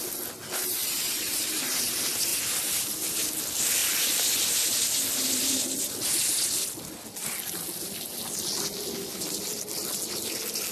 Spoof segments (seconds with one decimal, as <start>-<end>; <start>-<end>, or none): 0.8-1.8; 2.3-3.3; 3.8-5.9